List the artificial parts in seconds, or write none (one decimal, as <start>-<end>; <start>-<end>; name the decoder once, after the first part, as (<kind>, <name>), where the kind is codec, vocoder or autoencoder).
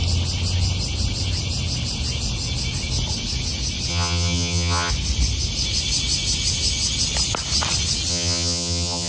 3.9-4.9 (vocoder, HiFi-GAN); 8.1-9.1